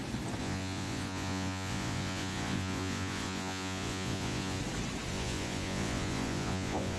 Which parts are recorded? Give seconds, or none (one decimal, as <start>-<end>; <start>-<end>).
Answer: 0.0-0.4; 4.6-5.1